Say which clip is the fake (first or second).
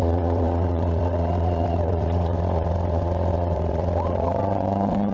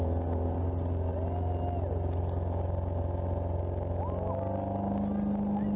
first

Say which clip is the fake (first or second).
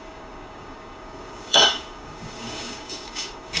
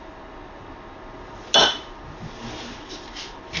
first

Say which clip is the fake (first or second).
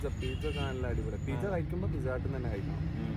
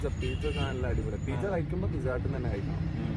second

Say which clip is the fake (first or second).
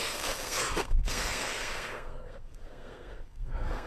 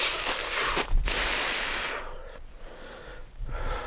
first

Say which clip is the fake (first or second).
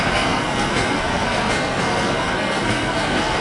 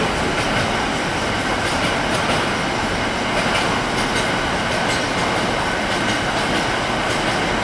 first